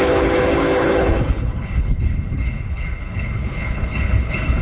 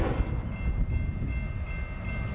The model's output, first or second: first